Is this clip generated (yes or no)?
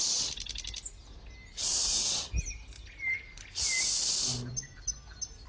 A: no